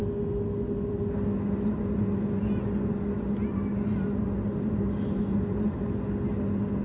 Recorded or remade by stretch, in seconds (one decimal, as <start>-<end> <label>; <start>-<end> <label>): 0.0-6.8 recorded